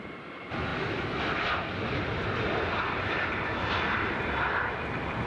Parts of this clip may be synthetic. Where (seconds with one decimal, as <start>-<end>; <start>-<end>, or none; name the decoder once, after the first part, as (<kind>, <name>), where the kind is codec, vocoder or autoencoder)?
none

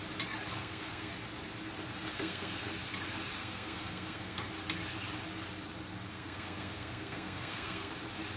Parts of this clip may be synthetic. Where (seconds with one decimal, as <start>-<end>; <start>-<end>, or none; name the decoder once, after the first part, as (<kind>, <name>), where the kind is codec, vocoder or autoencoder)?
0.6-1.1 (codec, SNAC); 2.1-2.7; 3.4-4.5; 6.1-7.9

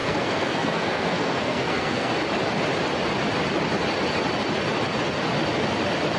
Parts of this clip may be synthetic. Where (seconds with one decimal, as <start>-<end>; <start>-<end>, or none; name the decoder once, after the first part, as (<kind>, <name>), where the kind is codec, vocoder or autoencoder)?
0.0-2.1 (codec, SNAC)

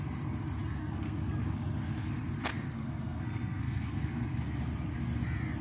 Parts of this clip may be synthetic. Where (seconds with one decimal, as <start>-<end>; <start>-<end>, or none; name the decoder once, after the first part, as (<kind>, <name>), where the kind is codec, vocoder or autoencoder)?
0.8-1.4 (codec, SNAC); 2.5-4.4

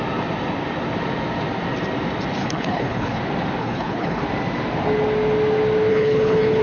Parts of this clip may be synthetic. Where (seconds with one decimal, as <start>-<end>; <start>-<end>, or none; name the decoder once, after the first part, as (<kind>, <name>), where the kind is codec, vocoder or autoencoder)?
2.4-3.2 (codec, HILCodec); 3.6-4.2; 5.9-6.6

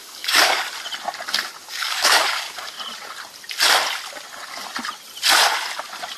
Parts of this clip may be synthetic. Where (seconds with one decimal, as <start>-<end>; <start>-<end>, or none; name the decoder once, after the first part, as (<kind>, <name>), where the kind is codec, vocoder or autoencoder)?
0.0-0.6 (codec, DAC); 1.6-2.7